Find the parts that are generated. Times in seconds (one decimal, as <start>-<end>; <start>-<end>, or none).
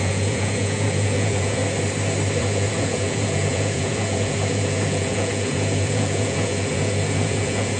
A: 0.0-1.6; 2.4-7.8